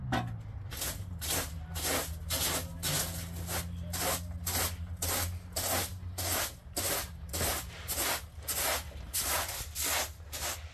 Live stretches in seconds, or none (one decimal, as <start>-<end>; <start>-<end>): 0.0-10.7